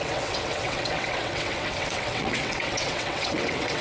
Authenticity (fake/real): fake